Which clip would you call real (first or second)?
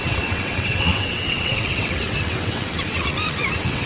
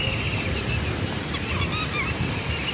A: second